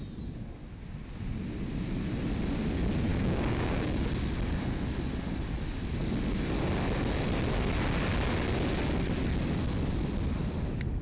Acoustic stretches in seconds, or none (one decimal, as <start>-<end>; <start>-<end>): 0.0-3.1; 4.1-11.0